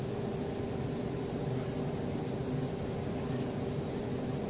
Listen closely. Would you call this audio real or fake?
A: real